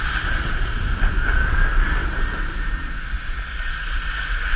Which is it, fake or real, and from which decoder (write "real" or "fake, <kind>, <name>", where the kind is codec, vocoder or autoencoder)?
real